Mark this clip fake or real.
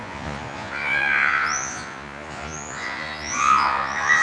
fake